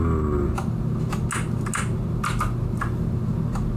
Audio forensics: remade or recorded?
recorded